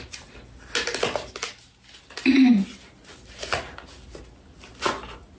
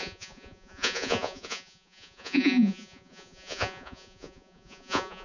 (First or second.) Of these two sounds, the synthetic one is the second